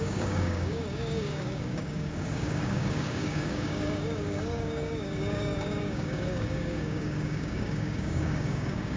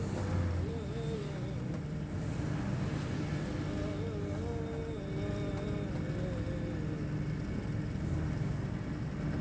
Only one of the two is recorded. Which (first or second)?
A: second